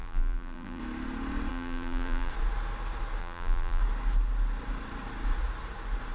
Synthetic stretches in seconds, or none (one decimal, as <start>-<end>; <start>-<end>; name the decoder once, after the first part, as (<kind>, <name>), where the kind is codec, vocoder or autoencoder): 0.0-0.8 (vocoder, BigVGAN v2); 1.5-2.3; 3.2-3.8